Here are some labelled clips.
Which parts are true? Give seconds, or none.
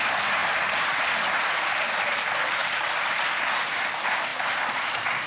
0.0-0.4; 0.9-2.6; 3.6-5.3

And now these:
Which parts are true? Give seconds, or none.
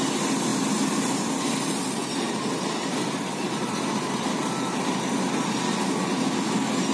0.0-2.0; 4.9-6.9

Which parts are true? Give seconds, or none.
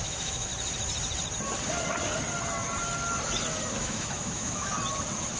0.5-3.7; 4.7-5.4